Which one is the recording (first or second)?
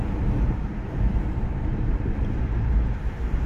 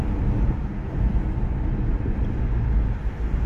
second